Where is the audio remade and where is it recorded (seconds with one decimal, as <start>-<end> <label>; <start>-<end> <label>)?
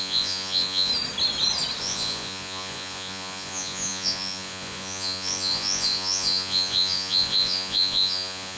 0.0-0.9 remade; 0.9-1.8 recorded; 1.8-8.6 remade